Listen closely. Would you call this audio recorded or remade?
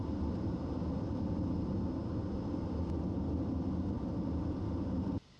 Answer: recorded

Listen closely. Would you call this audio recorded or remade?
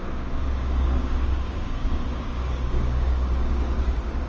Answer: remade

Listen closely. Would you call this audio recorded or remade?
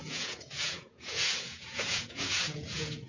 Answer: remade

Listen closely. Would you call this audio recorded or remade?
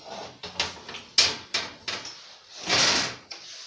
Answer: recorded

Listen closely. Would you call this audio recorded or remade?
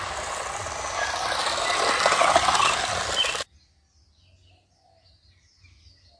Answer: recorded